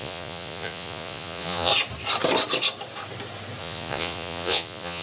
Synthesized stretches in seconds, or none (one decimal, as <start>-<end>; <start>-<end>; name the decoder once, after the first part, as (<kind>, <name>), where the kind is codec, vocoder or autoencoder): 0.0-1.7 (vocoder, Vocos); 3.6-5.0